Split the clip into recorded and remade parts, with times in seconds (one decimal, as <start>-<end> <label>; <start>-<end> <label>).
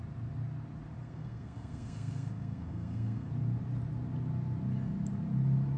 0.0-1.0 recorded; 1.0-3.3 remade; 3.3-5.8 recorded